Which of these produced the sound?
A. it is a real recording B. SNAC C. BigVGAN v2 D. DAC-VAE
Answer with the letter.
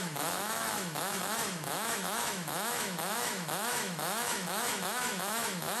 D